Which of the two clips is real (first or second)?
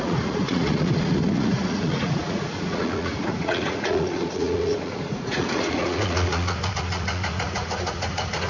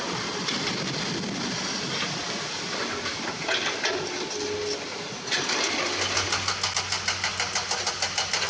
second